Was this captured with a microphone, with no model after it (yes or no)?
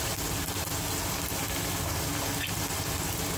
yes